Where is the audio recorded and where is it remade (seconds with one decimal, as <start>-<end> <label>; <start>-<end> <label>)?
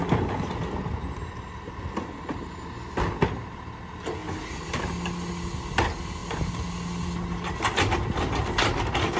0.0-9.2 recorded